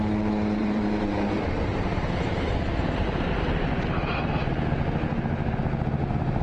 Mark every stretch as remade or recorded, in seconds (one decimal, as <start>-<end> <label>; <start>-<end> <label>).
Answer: 0.0-0.6 recorded; 0.6-4.4 remade; 4.4-6.4 recorded